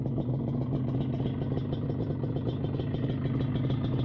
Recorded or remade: recorded